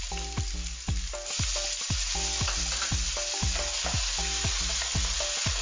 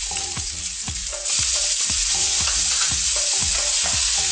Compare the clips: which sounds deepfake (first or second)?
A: second